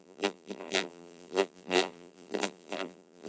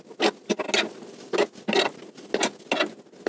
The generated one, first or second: first